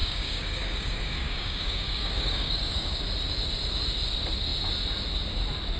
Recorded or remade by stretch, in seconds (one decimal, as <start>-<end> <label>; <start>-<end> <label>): 0.0-3.0 remade; 3.0-5.8 recorded